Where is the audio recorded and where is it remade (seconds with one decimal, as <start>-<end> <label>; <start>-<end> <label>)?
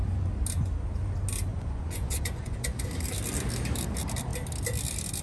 0.0-1.5 recorded; 1.5-2.9 remade; 2.9-5.2 recorded